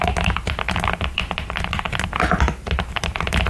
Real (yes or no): yes